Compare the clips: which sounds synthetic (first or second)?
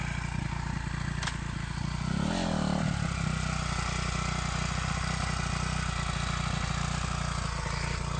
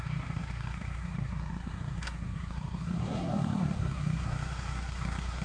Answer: second